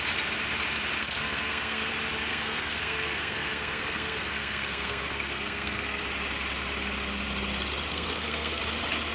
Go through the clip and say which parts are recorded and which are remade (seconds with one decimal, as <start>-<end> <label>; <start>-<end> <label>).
0.0-1.0 recorded; 1.0-1.9 remade; 1.9-2.3 recorded; 2.3-6.0 remade; 6.0-7.9 recorded; 7.9-8.6 remade; 8.6-9.1 recorded